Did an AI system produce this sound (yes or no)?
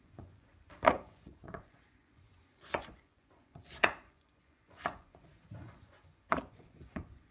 yes